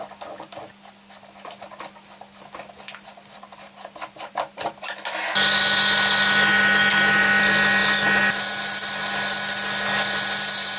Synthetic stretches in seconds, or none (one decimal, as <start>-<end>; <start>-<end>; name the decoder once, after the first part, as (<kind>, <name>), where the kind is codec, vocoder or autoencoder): none